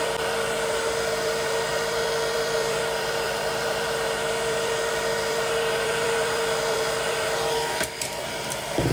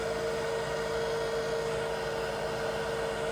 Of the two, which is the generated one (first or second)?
first